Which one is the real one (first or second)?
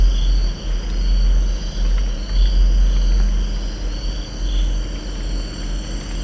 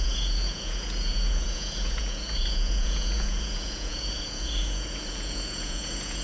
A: first